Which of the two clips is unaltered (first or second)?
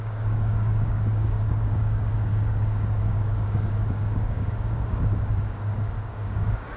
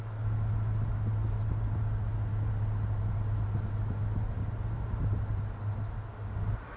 second